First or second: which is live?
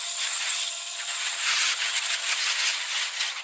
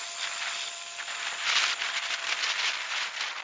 second